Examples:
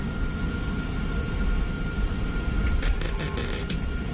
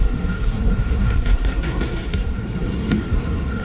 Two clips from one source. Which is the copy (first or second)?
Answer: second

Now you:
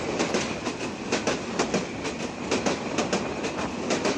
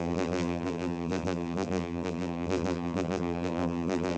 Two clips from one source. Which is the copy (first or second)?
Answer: second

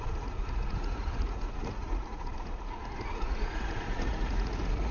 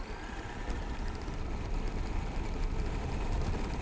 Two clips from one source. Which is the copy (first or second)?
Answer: first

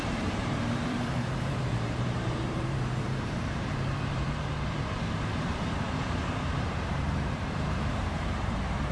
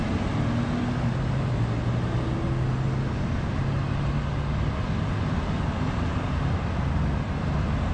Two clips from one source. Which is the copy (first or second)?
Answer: first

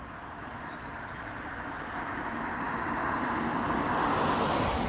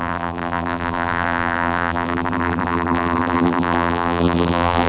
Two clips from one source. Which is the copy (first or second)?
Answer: second